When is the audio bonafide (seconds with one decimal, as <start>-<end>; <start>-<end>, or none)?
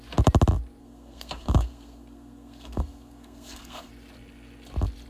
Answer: 0.0-0.8; 3.9-5.1